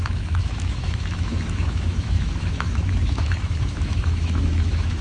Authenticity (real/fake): fake